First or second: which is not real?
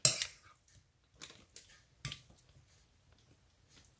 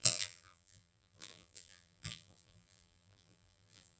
second